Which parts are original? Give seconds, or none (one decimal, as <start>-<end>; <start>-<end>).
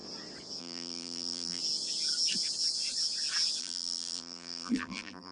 0.0-0.6; 1.6-3.6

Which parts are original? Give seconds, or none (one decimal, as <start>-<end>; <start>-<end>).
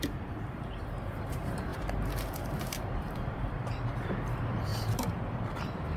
1.7-2.3; 4.7-5.3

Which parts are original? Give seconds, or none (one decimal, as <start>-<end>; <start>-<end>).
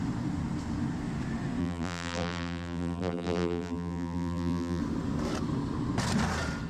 0.0-1.6; 4.8-6.7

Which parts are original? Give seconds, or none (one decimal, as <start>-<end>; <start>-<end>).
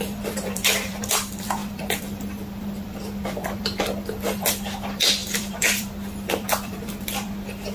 none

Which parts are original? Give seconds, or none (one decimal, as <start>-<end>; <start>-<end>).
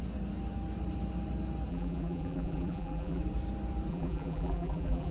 0.0-1.7; 3.2-3.9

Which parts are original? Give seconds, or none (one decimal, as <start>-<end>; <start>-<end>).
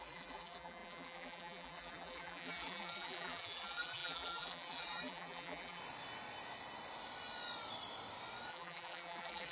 5.8-8.5